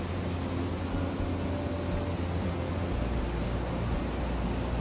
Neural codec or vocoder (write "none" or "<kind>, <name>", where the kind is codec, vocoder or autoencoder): none